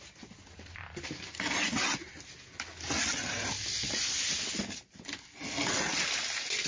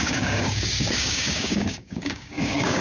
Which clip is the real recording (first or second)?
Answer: first